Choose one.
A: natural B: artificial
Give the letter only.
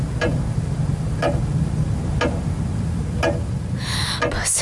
A